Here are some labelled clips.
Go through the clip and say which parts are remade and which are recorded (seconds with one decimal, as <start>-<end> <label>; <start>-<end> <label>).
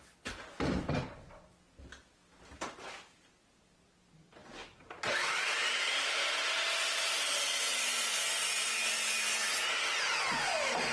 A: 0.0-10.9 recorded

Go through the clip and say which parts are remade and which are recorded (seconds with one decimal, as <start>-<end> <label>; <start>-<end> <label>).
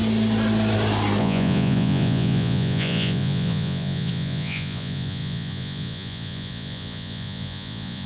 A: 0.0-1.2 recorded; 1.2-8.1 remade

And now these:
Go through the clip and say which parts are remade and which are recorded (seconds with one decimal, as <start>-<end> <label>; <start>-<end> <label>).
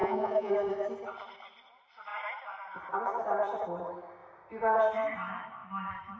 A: 0.0-0.5 remade; 0.5-6.2 recorded